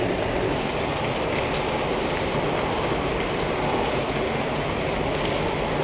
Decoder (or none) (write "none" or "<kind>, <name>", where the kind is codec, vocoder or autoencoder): none